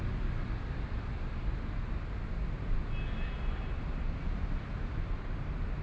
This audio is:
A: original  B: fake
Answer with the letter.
A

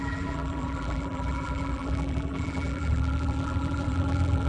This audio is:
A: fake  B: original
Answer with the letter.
A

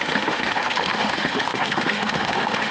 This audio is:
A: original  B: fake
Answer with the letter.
B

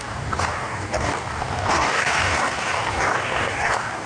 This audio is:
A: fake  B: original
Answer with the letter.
A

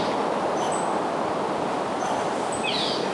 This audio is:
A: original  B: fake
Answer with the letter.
A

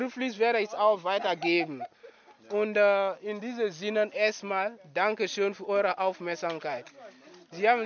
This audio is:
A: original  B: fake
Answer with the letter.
A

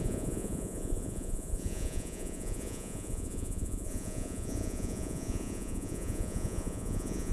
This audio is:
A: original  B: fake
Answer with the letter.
B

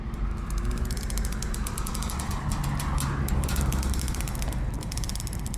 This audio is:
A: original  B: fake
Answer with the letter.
A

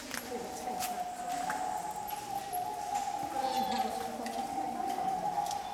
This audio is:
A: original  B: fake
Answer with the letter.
A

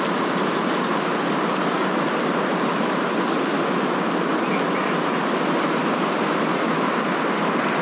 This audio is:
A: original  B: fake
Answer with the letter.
A